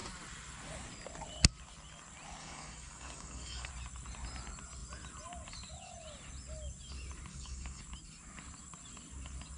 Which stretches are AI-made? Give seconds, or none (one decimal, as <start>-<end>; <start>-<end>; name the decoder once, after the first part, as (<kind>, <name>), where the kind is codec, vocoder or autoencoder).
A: 2.4-3.7 (codec, DAC); 7.3-7.8